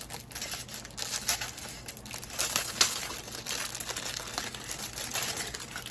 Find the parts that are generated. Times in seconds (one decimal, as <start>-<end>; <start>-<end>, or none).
2.6-3.1